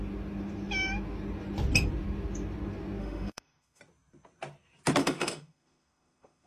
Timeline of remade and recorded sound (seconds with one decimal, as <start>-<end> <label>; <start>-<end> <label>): 0.0-3.0 recorded; 3.0-3.8 remade; 3.8-5.0 recorded; 5.0-6.5 remade